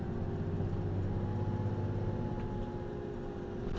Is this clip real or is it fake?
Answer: real